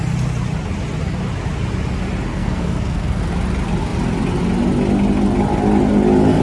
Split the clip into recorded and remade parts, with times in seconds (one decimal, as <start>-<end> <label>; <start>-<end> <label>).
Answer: 0.0-2.3 recorded; 2.3-3.2 remade; 3.2-6.4 recorded